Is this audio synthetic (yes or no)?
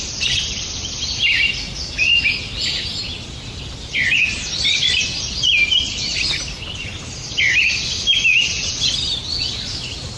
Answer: no